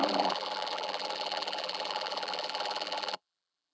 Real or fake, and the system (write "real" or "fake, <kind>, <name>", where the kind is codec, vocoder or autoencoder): fake, vocoder, BigVGAN v2